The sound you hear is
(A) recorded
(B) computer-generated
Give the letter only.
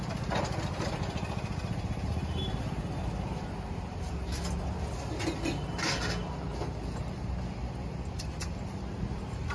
A